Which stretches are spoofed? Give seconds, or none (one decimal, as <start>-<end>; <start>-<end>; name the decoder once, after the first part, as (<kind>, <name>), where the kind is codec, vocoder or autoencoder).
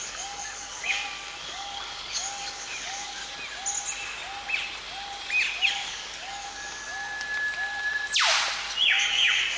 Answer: 0.0-3.2 (codec, DAC); 5.7-6.9; 8.8-9.6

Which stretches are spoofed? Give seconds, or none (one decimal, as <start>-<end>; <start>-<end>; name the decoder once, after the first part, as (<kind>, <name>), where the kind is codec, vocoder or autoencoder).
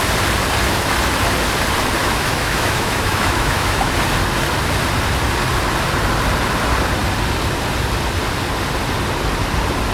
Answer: 2.0-3.9 (autoencoder, DAC-VAE)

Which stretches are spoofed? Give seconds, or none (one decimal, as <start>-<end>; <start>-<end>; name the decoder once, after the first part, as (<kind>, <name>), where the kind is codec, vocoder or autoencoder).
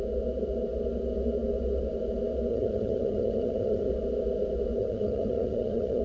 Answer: 2.5-3.9 (vocoder, HiFi-GAN); 4.8-6.0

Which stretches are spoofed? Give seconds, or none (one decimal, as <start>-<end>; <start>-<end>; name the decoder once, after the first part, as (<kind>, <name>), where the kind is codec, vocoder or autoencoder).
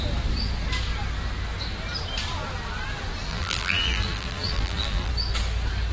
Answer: 3.3-5.1 (vocoder, BigVGAN v2)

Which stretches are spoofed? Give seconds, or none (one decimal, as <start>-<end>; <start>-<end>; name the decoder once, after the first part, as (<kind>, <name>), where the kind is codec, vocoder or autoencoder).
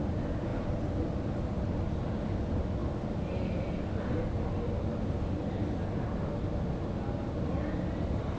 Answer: none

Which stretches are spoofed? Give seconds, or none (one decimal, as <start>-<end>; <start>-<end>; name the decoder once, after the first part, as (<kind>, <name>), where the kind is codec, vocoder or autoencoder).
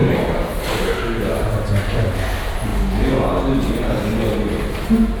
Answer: none